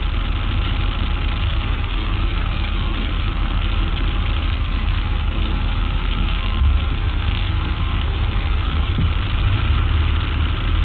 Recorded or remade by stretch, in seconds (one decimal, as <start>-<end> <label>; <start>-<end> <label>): 0.0-1.4 recorded; 1.4-3.9 remade; 3.9-4.4 recorded; 4.4-9.0 remade; 9.0-10.8 recorded

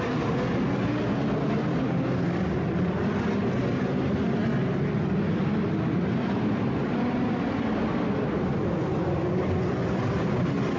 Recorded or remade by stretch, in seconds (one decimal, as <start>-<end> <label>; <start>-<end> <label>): 0.0-10.8 recorded

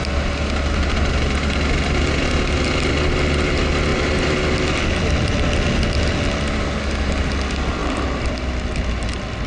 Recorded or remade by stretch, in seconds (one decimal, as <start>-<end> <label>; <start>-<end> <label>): 0.0-9.5 recorded